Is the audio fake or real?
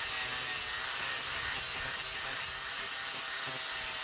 real